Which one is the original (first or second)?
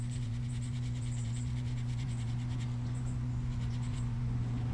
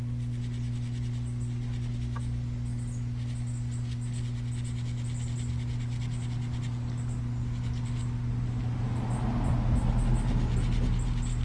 second